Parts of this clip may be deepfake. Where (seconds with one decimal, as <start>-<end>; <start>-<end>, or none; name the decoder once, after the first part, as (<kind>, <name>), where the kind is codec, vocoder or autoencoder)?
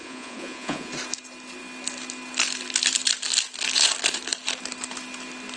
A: 0.0-0.9 (vocoder, Vocos)